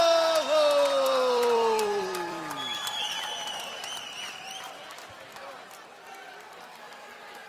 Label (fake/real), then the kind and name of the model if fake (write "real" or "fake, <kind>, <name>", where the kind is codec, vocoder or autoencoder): fake, vocoder, BigVGAN v2